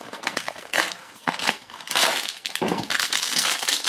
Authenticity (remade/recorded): remade